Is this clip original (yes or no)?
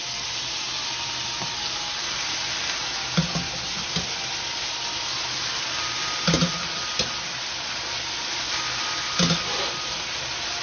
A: yes